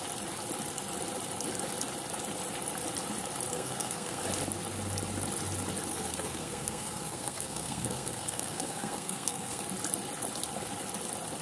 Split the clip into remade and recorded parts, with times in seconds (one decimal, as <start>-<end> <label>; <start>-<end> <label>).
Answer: 0.0-3.5 recorded; 3.5-4.2 remade; 4.2-5.9 recorded; 5.9-9.6 remade; 9.6-11.4 recorded